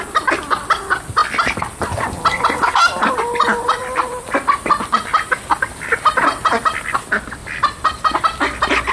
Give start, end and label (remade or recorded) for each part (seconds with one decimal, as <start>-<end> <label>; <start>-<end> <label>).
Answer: 0.0-7.4 recorded; 7.4-8.4 remade; 8.4-8.9 recorded